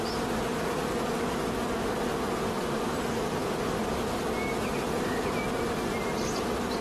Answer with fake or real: real